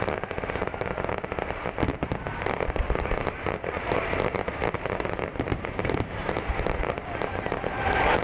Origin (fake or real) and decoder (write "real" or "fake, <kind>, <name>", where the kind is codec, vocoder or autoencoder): fake, vocoder, BigVGAN v2